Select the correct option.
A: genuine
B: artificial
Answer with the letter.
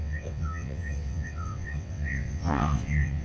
B